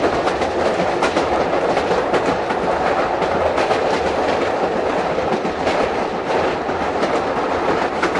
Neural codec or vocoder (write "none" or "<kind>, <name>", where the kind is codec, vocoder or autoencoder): none